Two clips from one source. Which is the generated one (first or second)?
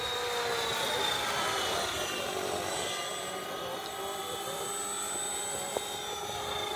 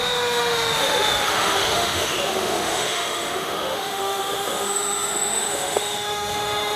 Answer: second